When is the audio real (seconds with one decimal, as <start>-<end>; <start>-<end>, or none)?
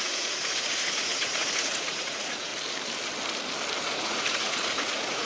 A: 2.5-3.8